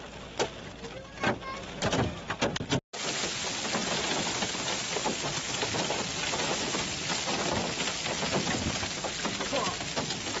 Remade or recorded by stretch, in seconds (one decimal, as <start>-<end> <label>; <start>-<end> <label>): 0.0-10.4 recorded